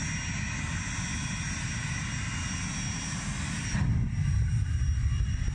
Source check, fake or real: real